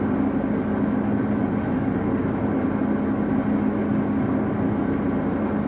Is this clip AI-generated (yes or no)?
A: no